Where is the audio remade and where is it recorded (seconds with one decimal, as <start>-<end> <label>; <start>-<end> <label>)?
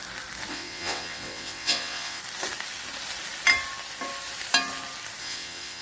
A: 0.0-0.5 recorded; 0.5-2.2 remade; 2.2-5.2 recorded; 5.2-5.8 remade